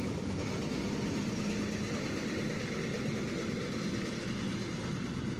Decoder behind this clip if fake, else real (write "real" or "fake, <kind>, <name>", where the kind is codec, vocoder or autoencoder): real